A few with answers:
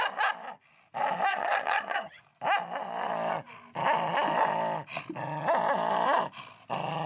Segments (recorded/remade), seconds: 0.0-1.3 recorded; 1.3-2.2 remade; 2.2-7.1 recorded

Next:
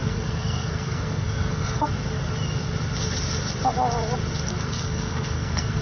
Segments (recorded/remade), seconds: 0.0-1.9 remade; 1.9-4.5 recorded; 4.5-5.8 remade

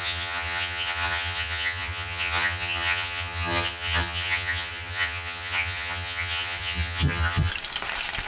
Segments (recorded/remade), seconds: 0.0-7.5 remade; 7.5-8.3 recorded